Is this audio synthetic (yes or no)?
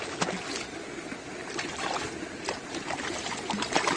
no